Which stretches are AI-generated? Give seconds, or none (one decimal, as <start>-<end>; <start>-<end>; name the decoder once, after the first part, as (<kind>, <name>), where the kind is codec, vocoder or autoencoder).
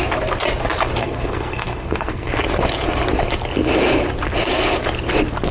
1.0-2.3 (codec, SNAC)